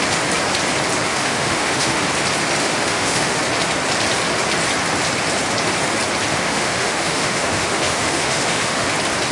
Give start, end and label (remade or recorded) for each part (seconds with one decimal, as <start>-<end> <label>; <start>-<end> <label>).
0.0-1.1 recorded; 1.1-2.0 remade; 2.0-2.6 recorded; 2.6-3.4 remade; 3.4-6.3 recorded; 6.3-8.9 remade; 8.9-9.3 recorded